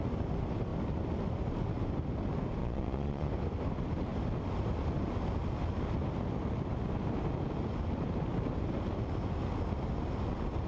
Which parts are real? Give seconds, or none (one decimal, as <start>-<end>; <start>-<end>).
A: 0.0-2.6; 3.3-10.7